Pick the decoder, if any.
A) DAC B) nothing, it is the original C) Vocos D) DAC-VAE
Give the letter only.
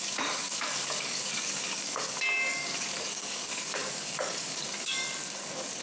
A